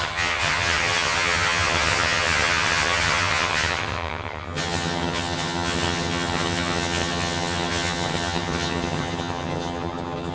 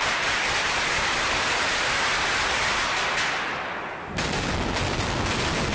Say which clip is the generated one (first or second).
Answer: first